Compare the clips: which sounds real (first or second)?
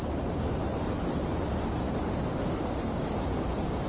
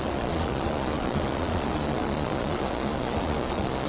first